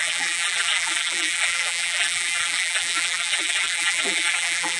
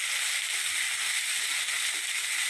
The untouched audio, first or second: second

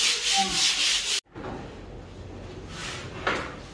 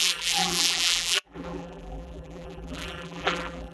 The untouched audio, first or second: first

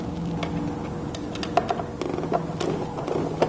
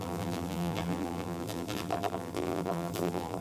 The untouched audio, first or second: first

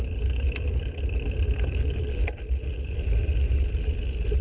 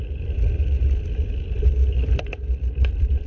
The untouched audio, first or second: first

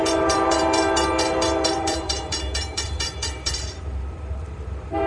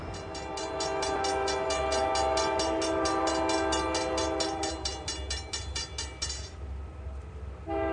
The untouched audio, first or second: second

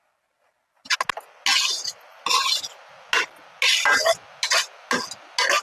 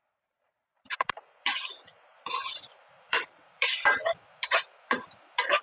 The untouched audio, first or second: first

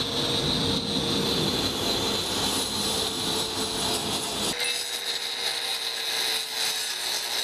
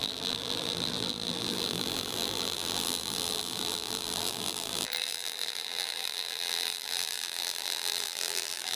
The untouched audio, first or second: first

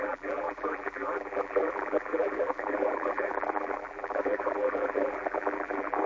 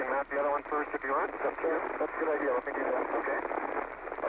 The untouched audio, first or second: second